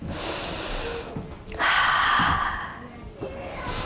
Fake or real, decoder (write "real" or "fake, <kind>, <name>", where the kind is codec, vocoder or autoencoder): real